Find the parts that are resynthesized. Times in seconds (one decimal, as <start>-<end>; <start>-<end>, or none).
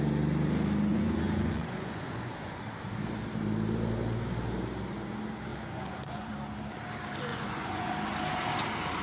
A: 0.9-2.6; 5.5-6.3; 7.3-7.9